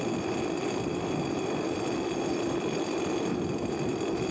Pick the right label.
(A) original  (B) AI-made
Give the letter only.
A